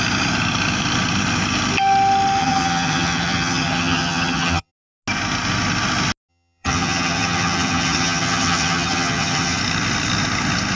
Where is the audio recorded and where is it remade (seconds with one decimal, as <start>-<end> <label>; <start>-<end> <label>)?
0.0-2.4 recorded; 2.4-4.7 remade; 4.7-6.3 recorded; 6.3-9.6 remade; 9.6-10.8 recorded

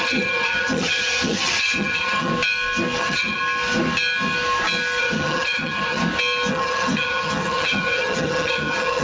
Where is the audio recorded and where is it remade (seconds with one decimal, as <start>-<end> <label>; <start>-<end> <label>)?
0.0-2.3 remade; 2.3-3.0 recorded; 3.0-3.4 remade; 3.4-5.0 recorded; 5.0-6.0 remade; 6.0-6.5 recorded; 6.5-9.0 remade

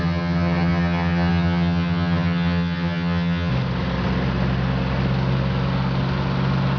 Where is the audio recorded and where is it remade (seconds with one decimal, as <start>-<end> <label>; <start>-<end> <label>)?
0.0-3.5 remade; 3.5-6.8 recorded